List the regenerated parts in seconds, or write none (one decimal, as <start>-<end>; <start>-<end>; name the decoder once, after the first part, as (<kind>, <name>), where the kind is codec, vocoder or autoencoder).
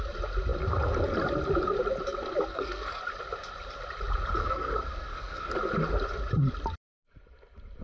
2.5-3.0 (codec, SNAC); 4.4-5.5